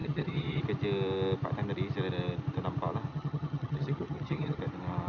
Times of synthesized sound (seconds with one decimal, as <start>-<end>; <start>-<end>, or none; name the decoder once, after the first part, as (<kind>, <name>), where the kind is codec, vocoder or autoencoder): 0.0-0.6 (vocoder, HiFi-GAN); 3.1-4.6